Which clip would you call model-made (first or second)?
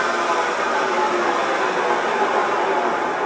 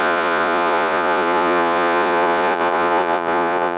second